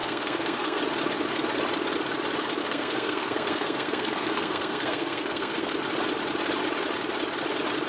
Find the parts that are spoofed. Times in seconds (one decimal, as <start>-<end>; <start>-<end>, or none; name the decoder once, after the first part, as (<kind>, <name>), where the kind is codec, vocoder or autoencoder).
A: 0.0-0.8 (codec, SNAC); 2.6-5.7